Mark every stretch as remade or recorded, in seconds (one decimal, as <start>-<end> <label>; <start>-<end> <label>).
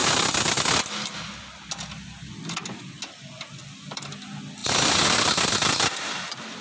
0.0-6.6 recorded